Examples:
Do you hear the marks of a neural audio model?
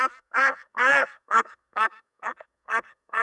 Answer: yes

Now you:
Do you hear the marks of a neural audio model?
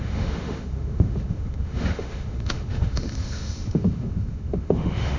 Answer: yes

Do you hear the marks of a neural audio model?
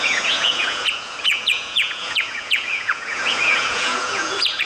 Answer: yes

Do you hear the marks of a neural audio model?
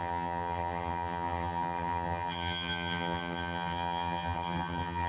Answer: yes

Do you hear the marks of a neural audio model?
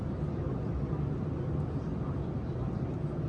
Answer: no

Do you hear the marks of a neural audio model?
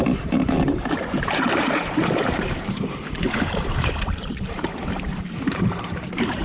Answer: yes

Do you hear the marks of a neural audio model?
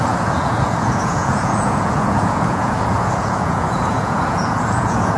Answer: yes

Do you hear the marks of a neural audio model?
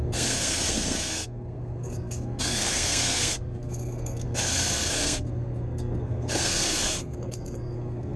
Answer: yes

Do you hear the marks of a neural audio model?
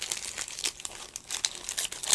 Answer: no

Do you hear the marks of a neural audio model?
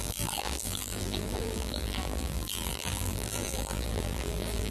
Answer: yes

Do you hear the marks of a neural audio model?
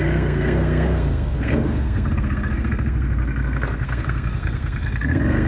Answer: yes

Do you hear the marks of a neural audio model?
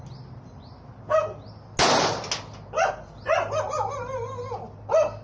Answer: no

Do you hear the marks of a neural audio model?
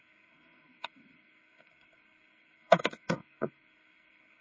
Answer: yes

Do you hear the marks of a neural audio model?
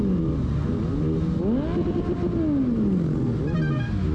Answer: no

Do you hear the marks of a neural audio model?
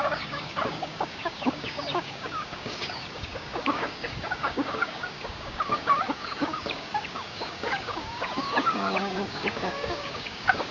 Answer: yes